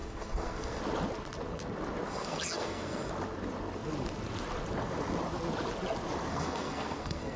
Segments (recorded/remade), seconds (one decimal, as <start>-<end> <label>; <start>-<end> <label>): 0.0-0.8 remade; 0.8-2.1 recorded; 2.1-3.1 remade; 3.1-6.3 recorded; 6.3-7.4 remade